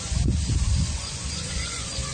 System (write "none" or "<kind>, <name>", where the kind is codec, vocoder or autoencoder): vocoder, Vocos